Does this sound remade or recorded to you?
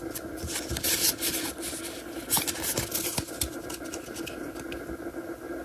recorded